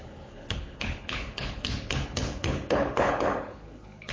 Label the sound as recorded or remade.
remade